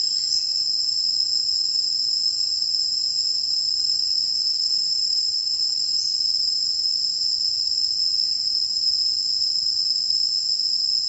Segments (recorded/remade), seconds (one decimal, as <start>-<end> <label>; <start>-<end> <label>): 0.0-4.3 recorded; 4.3-5.8 remade; 5.8-11.1 recorded